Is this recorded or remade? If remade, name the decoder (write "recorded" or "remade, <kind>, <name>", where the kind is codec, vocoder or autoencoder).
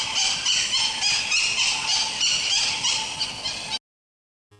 recorded